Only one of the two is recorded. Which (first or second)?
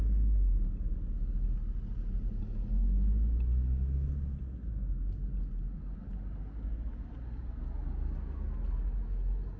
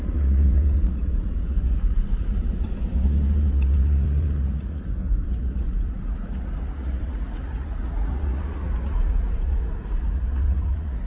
first